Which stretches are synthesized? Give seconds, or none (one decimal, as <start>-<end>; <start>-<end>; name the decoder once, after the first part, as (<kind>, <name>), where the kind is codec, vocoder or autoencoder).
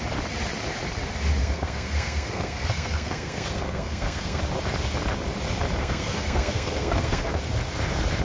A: 1.4-4.4 (codec, SNAC); 5.8-7.4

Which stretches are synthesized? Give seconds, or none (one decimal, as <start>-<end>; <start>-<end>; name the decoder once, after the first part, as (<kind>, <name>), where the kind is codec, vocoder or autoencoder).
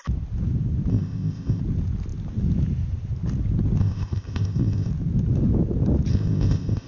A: 0.9-1.6 (codec, ZipCodec); 3.8-4.9; 6.1-6.9